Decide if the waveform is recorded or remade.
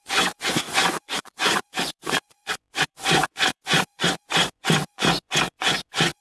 remade